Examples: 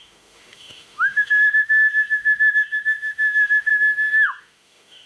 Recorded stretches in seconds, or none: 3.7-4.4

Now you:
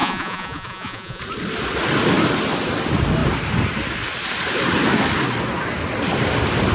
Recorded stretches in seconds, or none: 1.2-6.7